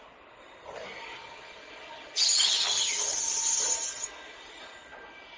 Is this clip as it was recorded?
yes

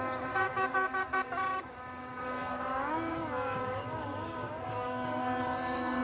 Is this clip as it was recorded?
no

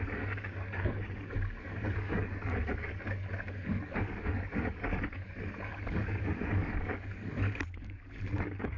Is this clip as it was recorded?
no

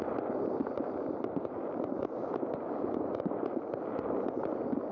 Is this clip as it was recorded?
yes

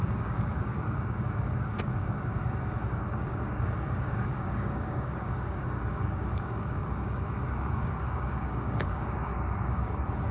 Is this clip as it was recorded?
no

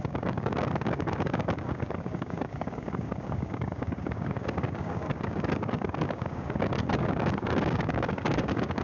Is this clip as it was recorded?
no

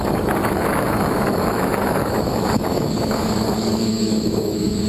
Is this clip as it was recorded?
no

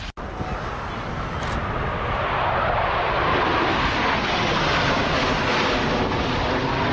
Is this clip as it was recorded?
yes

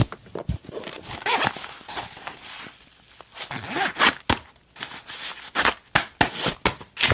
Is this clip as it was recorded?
yes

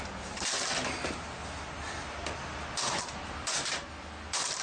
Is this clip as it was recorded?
yes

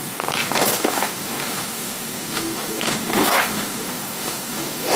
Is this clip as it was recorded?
no